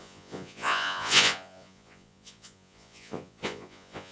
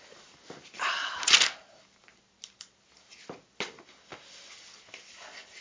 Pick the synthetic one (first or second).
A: first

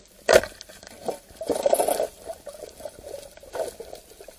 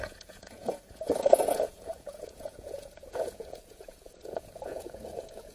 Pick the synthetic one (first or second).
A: second